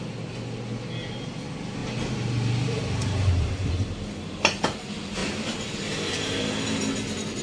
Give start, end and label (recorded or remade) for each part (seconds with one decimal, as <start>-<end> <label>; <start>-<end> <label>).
0.0-1.8 recorded; 1.8-3.7 remade; 3.7-5.2 recorded; 5.2-6.5 remade; 6.5-7.4 recorded